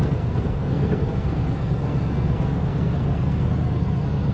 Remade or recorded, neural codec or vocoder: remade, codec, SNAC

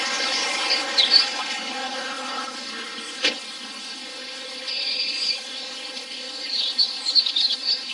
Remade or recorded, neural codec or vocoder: remade, codec, HILCodec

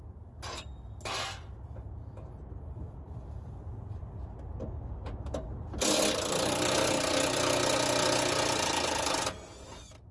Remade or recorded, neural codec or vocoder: recorded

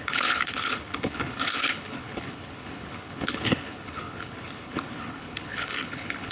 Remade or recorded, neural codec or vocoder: remade, codec, HILCodec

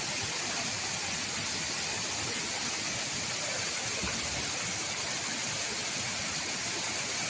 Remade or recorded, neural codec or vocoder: recorded